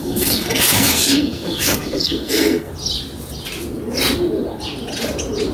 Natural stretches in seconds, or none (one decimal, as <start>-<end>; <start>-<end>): 2.7-5.5